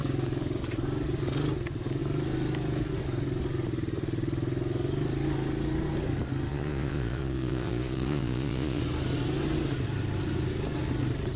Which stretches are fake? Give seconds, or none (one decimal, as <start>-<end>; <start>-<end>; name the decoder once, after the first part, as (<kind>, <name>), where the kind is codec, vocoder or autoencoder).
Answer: 6.5-8.8 (vocoder, Vocos)